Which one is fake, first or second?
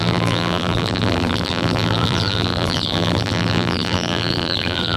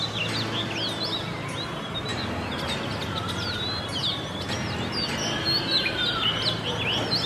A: first